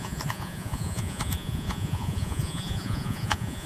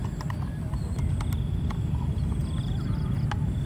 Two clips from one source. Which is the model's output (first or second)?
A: first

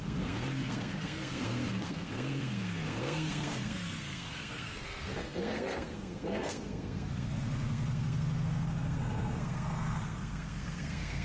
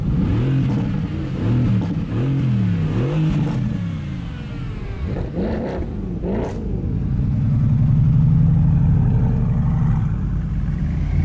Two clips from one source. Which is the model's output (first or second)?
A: first